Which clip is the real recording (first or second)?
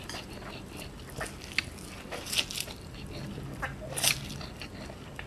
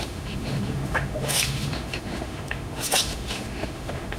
first